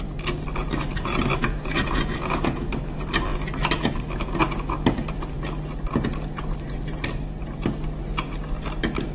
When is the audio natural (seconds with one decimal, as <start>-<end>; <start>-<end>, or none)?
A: 0.0-0.9; 2.7-9.1